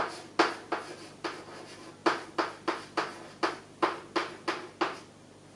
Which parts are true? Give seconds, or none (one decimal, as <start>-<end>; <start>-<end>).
0.0-5.6